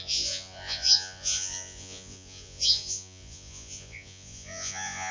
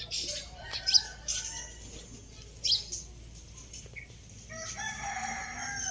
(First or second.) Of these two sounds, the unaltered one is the second